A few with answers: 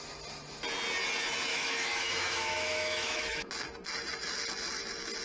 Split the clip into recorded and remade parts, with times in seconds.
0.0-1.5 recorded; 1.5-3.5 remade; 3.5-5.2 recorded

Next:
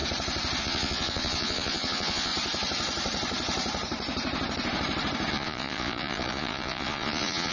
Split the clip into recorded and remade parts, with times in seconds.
0.0-0.6 recorded; 0.6-2.3 remade; 2.3-5.3 recorded; 5.3-7.5 remade

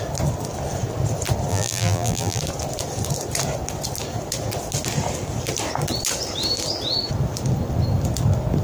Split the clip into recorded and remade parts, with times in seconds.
0.0-1.5 recorded; 1.5-2.4 remade; 2.4-8.6 recorded

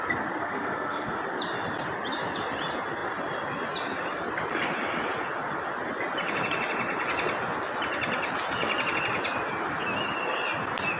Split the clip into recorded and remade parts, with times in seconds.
0.0-0.4 recorded; 0.4-1.2 remade; 1.2-11.0 recorded

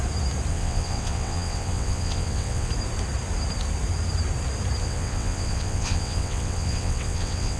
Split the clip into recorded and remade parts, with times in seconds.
0.0-0.5 recorded; 0.5-2.7 remade; 2.7-4.8 recorded; 4.8-7.6 remade

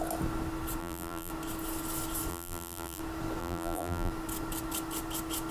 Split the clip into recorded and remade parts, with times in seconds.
0.0-0.8 recorded; 0.8-1.3 remade; 1.3-2.3 recorded; 2.3-3.0 remade; 3.0-3.4 recorded; 3.4-4.1 remade; 4.1-5.5 recorded